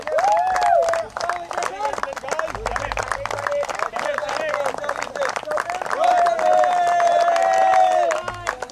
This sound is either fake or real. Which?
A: real